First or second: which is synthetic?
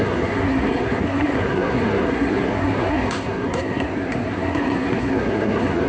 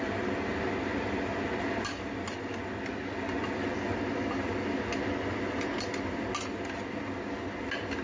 first